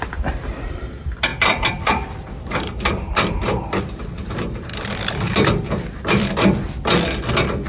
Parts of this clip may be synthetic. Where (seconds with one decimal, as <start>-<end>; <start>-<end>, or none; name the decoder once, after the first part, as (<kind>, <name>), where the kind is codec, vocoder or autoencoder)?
1.3-3.8 (vocoder, BigVGAN v2); 4.7-7.3